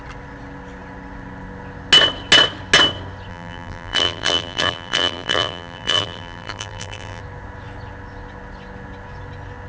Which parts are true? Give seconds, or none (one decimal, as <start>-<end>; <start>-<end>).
0.0-3.3; 7.2-9.7